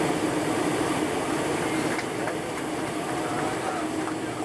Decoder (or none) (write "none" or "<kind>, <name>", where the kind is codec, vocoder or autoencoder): none